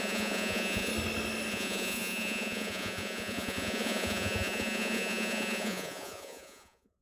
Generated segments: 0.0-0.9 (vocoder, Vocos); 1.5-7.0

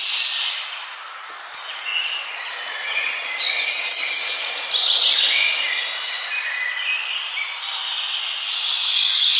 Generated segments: 0.0-1.9 (vocoder, BigVGAN v2); 6.8-7.8

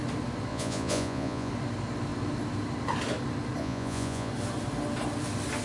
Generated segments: 0.5-1.5 (vocoder, Vocos); 3.6-4.3

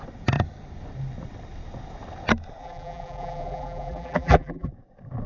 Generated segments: 2.6-4.7 (vocoder, BigVGAN v2)

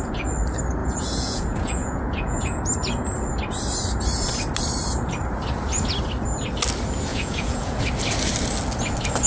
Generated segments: 0.8-2.6 (vocoder, Vocos); 7.1-7.8

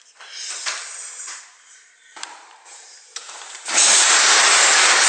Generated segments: 1.0-4.1 (vocoder, BigVGAN v2)